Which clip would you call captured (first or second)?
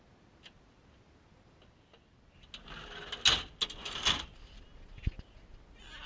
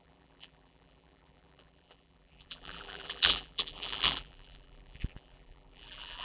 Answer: first